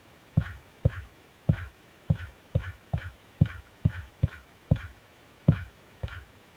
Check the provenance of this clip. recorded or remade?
remade